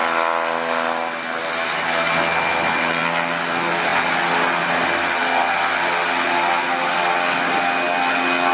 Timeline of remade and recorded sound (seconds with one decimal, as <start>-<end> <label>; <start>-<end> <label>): 0.0-8.5 recorded